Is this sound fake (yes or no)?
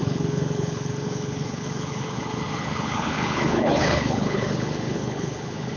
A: yes